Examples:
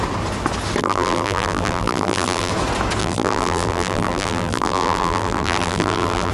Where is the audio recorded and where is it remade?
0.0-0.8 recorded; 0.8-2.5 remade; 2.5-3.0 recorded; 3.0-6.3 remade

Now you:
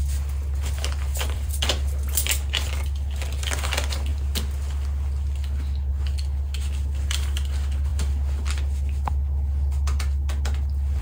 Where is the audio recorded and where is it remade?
0.0-1.1 recorded; 1.1-1.6 remade; 1.6-11.0 recorded

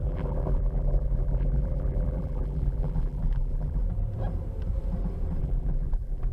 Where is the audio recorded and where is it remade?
0.0-3.8 remade; 3.8-5.4 recorded; 5.4-6.3 remade